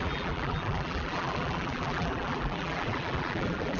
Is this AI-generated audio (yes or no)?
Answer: yes